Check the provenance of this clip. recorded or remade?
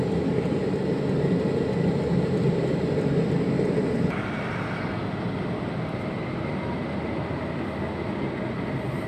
recorded